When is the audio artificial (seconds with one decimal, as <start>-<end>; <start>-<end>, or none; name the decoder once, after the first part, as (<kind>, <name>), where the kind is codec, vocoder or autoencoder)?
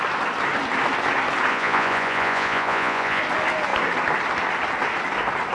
1.5-3.2 (vocoder, Vocos)